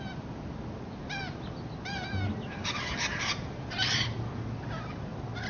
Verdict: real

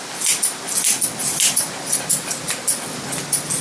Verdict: real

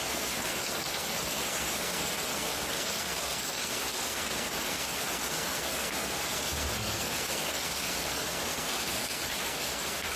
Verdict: fake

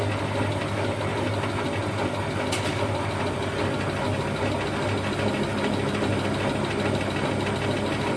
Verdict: real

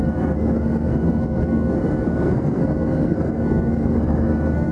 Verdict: fake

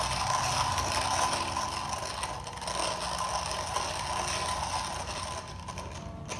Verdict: real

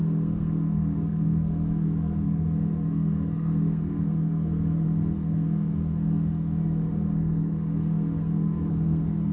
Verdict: fake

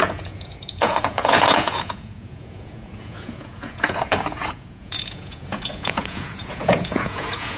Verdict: fake